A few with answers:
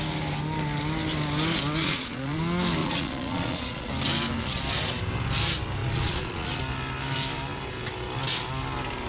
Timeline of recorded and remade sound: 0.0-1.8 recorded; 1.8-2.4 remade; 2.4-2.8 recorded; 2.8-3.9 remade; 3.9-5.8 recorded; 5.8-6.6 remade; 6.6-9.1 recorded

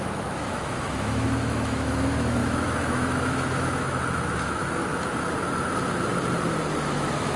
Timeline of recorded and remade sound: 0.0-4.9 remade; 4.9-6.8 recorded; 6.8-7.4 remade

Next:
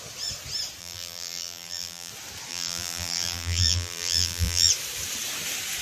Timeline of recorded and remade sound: 0.0-0.8 recorded; 0.8-2.1 remade; 2.1-2.5 recorded; 2.5-4.7 remade; 4.7-5.8 recorded

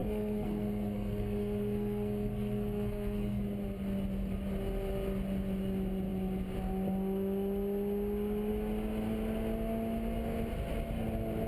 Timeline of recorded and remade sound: 0.0-3.4 remade; 3.4-11.5 recorded